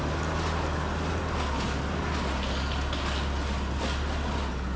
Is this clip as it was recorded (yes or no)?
yes